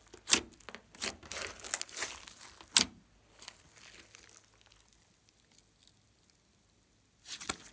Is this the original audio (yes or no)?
yes